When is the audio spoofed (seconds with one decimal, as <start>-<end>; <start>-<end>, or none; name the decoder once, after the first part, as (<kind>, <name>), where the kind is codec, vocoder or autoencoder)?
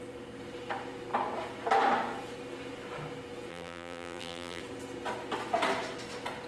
3.5-4.6 (vocoder, BigVGAN v2)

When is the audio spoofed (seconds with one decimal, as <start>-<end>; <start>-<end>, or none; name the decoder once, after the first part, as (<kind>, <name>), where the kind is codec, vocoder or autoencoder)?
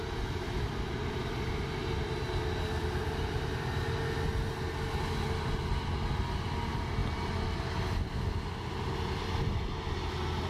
none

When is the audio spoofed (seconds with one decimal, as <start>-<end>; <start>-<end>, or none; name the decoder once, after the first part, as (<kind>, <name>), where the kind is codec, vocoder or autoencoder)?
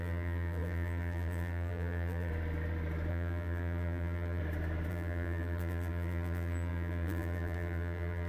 0.0-2.3 (vocoder, BigVGAN v2); 3.1-4.4; 4.9-8.3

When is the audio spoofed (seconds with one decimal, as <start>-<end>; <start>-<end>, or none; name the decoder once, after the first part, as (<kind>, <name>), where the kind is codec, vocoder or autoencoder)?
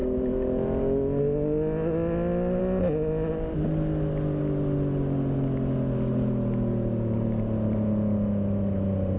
none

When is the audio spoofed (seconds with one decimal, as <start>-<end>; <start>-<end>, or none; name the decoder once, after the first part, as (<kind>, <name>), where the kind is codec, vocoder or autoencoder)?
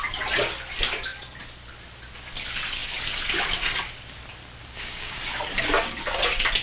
4.6-5.2 (codec, DAC)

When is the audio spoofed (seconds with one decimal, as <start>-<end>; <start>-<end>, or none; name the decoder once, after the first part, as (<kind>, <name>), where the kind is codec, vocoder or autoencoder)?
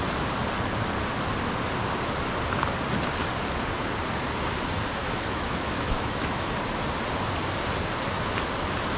5.0-6.5 (autoencoder, DAC-VAE)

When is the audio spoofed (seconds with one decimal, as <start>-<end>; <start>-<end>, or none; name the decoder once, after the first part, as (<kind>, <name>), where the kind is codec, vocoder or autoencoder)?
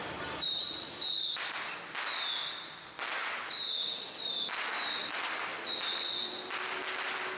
none